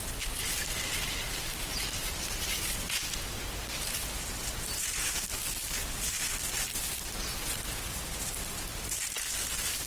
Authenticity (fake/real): real